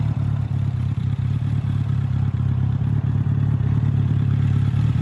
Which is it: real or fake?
fake